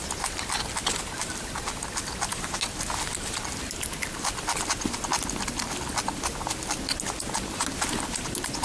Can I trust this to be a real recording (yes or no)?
yes